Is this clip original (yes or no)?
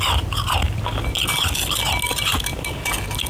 yes